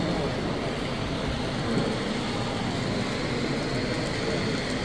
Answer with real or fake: real